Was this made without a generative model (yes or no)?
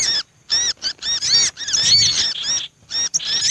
yes